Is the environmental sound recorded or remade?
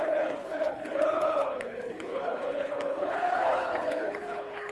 remade